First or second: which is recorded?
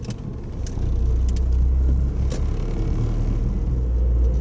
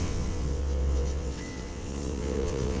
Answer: first